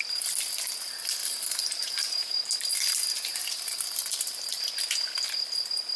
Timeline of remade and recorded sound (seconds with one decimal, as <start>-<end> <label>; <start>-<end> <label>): 0.0-1.2 recorded; 1.2-2.5 remade; 2.5-3.3 recorded; 3.3-4.1 remade; 4.1-6.0 recorded